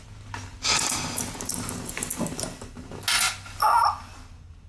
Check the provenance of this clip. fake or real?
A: real